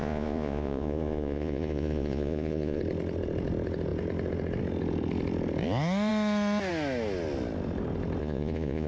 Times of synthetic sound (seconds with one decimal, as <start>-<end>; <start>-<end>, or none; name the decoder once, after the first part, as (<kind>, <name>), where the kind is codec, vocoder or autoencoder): 0.0-2.8 (vocoder, Vocos); 8.2-8.9